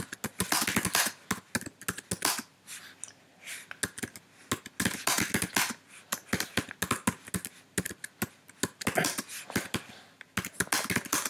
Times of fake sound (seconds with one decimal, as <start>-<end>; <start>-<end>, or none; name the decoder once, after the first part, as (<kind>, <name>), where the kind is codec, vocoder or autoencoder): none